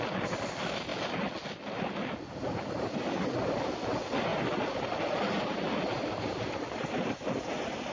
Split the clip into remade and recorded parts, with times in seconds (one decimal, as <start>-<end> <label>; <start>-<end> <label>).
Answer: 0.0-7.9 recorded

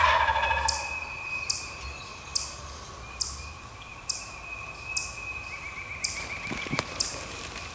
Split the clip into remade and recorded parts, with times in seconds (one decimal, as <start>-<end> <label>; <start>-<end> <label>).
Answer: 0.0-7.7 recorded

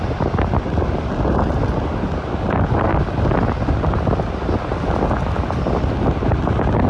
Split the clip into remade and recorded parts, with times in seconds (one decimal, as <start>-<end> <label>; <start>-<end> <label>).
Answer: 0.0-6.9 recorded

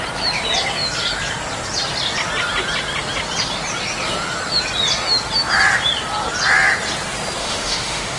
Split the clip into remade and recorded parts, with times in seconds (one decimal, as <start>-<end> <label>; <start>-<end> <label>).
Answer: 0.0-7.4 recorded; 7.4-8.2 remade

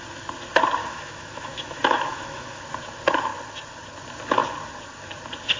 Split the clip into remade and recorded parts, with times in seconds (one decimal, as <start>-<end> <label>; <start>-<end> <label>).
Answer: 0.0-0.8 recorded; 0.8-2.6 remade; 2.6-5.6 recorded

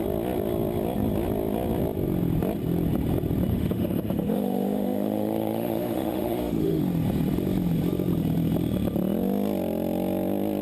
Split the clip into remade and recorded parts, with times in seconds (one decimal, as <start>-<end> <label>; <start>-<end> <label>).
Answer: 0.0-3.5 recorded; 3.5-6.8 remade; 6.8-10.6 recorded